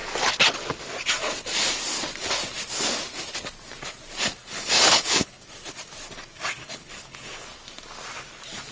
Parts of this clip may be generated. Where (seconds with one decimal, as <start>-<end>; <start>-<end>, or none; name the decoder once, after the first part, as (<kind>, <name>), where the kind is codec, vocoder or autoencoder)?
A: 4.4-5.4 (codec, HILCodec); 6.6-7.3